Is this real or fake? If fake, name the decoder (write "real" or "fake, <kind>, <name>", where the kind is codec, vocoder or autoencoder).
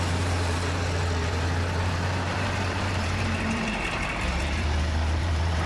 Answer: fake, vocoder, BigVGAN v2